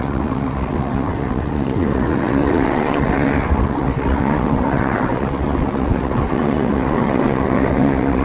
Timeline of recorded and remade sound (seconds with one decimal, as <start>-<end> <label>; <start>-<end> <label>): 0.0-8.2 remade